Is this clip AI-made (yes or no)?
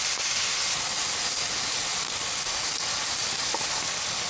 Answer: no